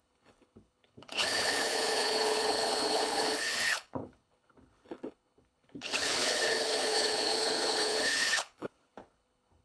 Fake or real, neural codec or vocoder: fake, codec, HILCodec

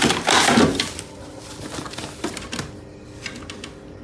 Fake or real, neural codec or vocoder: real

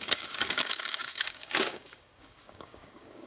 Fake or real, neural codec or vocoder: fake, codec, DAC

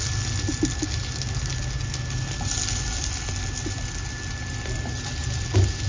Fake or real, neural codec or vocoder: real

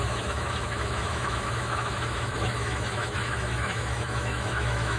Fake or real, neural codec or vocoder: fake, autoencoder, DAC-VAE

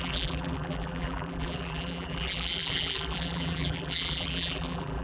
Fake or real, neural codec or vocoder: fake, vocoder, BigVGAN v2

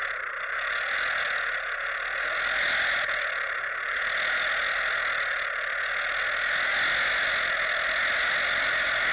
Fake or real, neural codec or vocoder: real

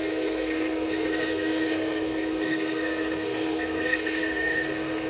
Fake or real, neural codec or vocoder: fake, codec, SNAC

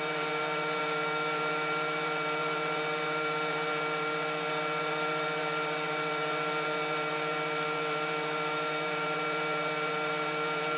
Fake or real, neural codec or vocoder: fake, vocoder, BigVGAN v2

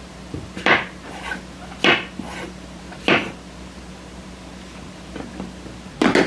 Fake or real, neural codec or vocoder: real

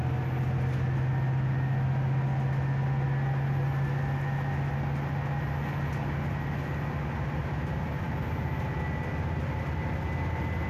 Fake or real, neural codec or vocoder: real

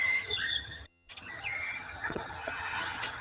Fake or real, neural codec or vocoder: fake, vocoder, HiFi-GAN